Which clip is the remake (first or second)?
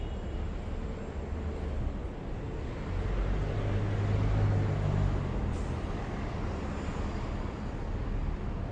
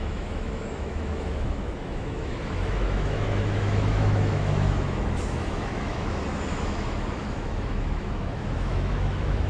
second